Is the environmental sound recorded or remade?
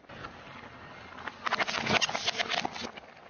recorded